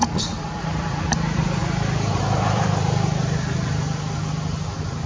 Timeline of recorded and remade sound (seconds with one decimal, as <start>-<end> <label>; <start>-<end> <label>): 0.0-5.1 remade